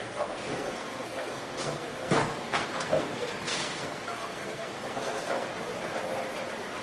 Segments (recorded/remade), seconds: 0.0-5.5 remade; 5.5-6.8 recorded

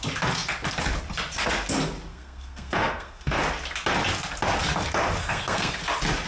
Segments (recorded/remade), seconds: 0.0-2.1 recorded; 2.1-3.4 remade; 3.4-5.2 recorded; 5.2-5.8 remade; 5.8-6.3 recorded

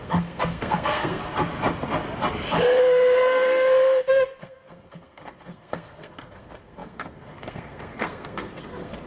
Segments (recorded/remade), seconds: 0.0-1.2 remade; 1.2-2.8 recorded; 2.8-9.1 remade

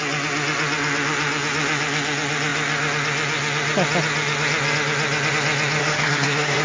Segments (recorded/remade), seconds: 0.0-5.8 recorded; 5.8-6.6 remade